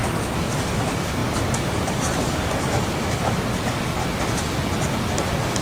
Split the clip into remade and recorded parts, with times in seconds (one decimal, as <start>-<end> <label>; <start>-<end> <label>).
0.0-4.0 remade; 4.0-5.6 recorded